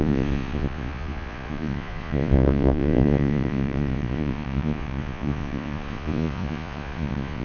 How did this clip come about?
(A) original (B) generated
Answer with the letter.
B